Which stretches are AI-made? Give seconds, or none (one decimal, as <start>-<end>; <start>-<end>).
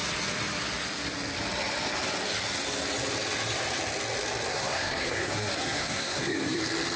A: 4.5-6.6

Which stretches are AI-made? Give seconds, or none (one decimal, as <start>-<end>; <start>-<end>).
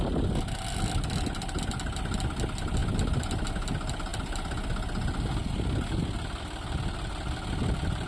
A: none